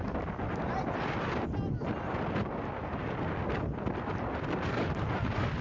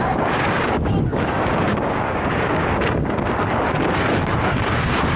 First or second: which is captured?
first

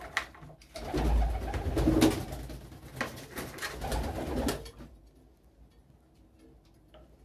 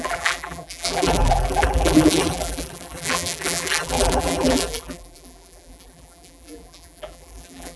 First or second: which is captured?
first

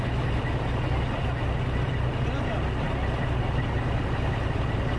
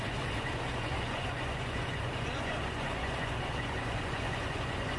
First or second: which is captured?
first